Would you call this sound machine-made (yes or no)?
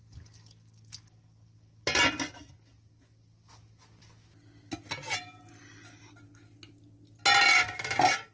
no